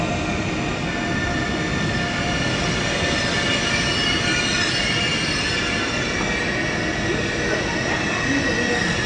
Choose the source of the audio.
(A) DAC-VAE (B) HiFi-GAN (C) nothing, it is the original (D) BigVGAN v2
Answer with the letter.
C